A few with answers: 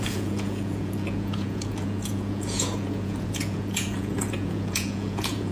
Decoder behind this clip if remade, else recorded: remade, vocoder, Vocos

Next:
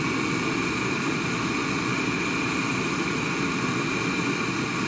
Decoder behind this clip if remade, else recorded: recorded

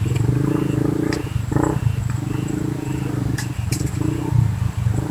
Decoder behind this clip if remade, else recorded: recorded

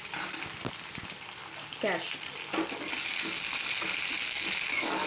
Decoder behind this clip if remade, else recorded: recorded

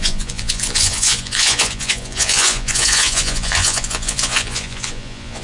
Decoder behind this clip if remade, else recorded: remade, vocoder, Vocos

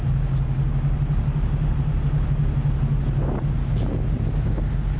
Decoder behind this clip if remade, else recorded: recorded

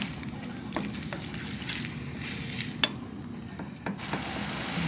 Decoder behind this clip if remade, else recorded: recorded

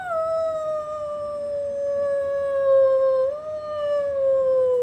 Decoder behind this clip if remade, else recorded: recorded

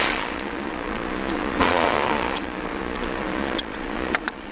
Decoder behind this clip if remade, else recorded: remade, vocoder, Vocos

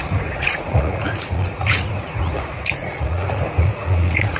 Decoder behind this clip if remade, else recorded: remade, vocoder, Vocos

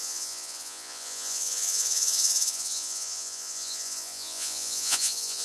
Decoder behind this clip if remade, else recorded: remade, vocoder, Vocos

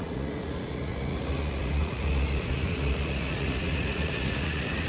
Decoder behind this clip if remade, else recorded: remade, vocoder, Vocos